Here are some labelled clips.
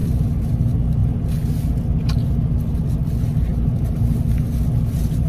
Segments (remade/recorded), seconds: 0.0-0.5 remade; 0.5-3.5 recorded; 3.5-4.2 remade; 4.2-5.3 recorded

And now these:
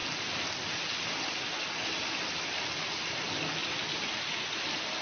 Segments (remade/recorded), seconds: 0.0-5.0 recorded

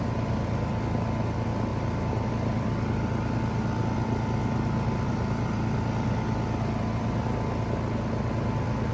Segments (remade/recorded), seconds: 0.0-1.7 recorded; 1.7-2.3 remade; 2.3-8.9 recorded

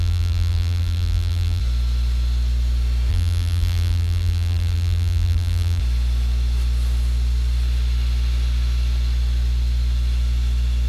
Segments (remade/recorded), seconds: 0.0-1.6 remade; 1.6-3.1 recorded; 3.1-5.8 remade; 5.8-10.9 recorded

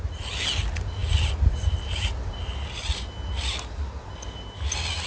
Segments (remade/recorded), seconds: 0.0-5.1 recorded

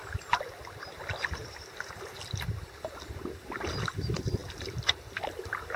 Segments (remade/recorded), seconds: 0.0-3.5 recorded; 3.5-4.4 remade; 4.4-5.2 recorded; 5.2-5.8 remade

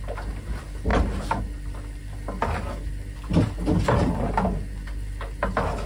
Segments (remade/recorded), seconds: 0.0-0.9 recorded; 0.9-1.4 remade; 1.4-5.9 recorded

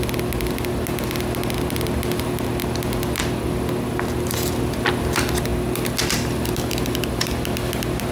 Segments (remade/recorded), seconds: 0.0-8.1 recorded